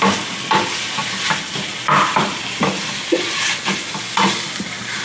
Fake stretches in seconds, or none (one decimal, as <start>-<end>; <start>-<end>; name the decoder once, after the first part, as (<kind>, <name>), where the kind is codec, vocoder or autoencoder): none